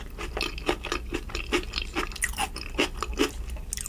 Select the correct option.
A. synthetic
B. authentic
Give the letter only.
B